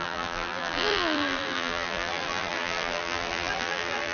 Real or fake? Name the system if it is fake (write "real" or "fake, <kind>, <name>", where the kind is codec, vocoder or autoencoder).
fake, vocoder, BigVGAN v2